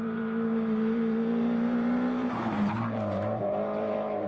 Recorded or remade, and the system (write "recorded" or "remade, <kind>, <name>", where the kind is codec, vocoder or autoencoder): remade, vocoder, BigVGAN v2